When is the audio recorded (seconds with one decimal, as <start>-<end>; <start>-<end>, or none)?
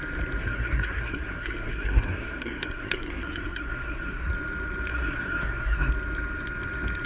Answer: 0.0-0.4; 4.3-4.9; 5.9-7.1